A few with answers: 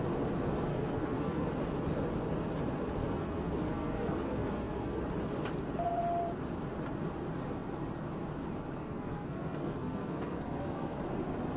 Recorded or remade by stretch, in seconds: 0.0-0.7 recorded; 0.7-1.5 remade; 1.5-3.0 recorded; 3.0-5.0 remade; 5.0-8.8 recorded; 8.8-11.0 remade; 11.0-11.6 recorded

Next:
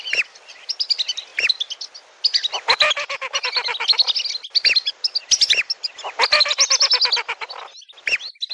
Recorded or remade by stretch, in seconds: 0.0-8.5 recorded

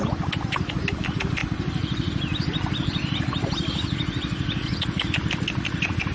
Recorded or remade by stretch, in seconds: 0.0-6.1 recorded